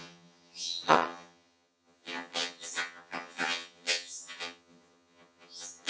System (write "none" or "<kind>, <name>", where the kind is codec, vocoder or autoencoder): vocoder, HiFi-GAN